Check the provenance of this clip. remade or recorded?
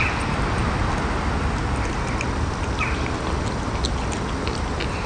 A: recorded